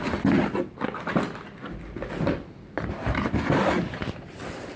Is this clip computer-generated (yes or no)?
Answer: yes